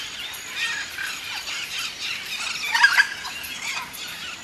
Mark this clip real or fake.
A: real